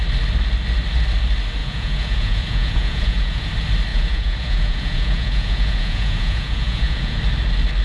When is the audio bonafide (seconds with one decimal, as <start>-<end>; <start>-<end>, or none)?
0.0-1.6; 3.5-3.9; 7.2-7.8